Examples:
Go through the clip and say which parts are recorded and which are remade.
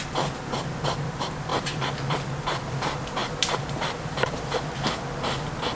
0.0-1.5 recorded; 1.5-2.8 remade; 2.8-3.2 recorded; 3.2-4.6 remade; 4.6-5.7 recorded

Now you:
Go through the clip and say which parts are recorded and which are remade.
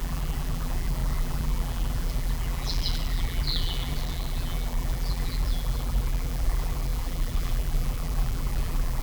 0.0-9.0 remade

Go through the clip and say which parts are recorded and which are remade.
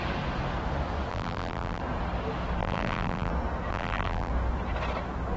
0.0-1.1 recorded; 1.1-1.8 remade; 1.8-2.6 recorded; 2.6-3.3 remade; 3.3-3.7 recorded; 3.7-4.3 remade; 4.3-5.4 recorded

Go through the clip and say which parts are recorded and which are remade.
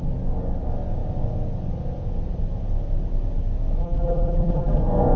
0.0-3.8 recorded; 3.8-4.8 remade; 4.8-5.2 recorded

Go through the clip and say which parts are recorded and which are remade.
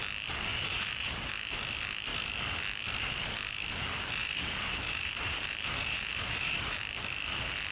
0.0-0.5 recorded; 0.5-1.3 remade; 1.3-4.2 recorded; 4.2-6.8 remade; 6.8-7.7 recorded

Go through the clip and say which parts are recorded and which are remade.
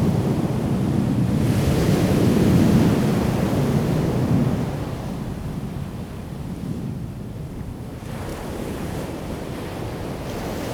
0.0-2.9 remade; 2.9-4.4 recorded; 4.4-6.2 remade; 6.2-10.7 recorded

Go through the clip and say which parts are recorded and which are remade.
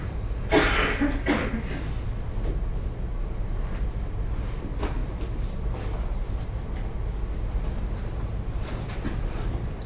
0.0-9.9 recorded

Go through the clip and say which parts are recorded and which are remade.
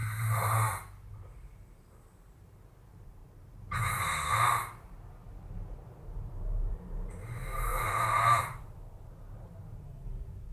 0.0-1.1 recorded; 1.1-3.2 remade; 3.2-6.3 recorded; 6.3-10.5 remade